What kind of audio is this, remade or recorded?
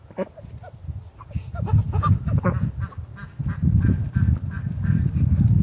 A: recorded